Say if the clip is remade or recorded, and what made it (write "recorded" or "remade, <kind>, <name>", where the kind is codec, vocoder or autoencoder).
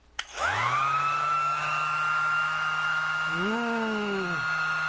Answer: remade, autoencoder, DAC-VAE